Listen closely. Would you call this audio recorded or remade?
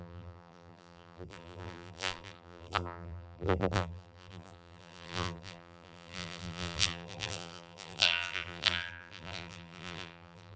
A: remade